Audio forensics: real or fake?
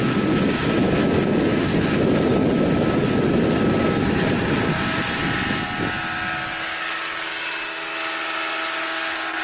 real